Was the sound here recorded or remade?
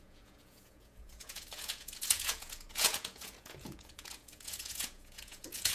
remade